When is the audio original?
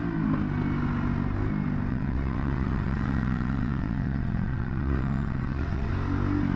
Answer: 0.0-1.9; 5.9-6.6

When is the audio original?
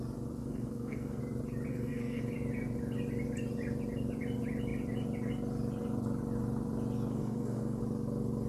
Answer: 0.0-0.4; 1.2-1.7; 2.2-7.1; 7.8-8.5